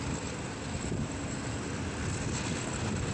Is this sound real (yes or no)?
yes